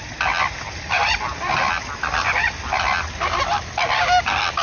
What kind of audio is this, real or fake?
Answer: real